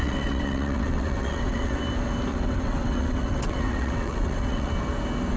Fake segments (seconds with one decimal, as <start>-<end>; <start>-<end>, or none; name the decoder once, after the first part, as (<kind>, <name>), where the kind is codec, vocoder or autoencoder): 0.0-1.8 (vocoder, WaveNeXt); 2.3-4.7

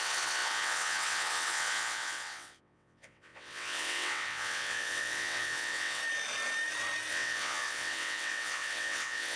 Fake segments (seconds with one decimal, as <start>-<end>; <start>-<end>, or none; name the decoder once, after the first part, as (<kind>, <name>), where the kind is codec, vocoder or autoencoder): 0.0-6.0 (vocoder, WaveNeXt); 7.1-9.4

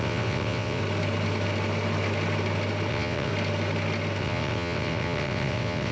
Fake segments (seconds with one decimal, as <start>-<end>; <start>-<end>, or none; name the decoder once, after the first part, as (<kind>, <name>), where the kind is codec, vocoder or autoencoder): 0.0-0.8 (vocoder, WaveNeXt); 2.9-3.3; 4.2-5.9

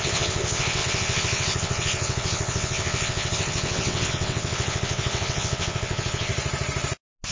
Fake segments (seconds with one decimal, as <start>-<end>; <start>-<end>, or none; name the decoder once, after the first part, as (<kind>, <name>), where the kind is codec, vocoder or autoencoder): 0.0-6.3 (vocoder, WaveNeXt)

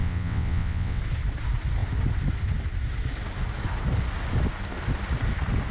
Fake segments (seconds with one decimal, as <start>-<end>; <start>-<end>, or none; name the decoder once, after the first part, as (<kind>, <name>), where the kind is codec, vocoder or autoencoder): 0.0-1.0 (vocoder, WaveNeXt)

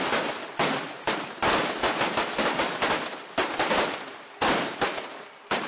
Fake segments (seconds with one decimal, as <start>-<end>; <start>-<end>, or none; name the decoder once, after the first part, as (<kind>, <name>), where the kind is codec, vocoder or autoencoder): none